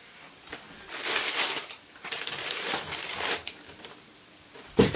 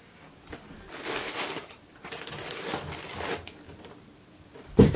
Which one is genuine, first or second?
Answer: second